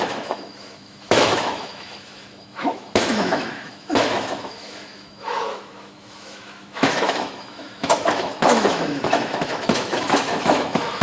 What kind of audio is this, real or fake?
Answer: fake